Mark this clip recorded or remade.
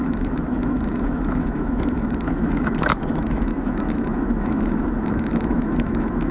remade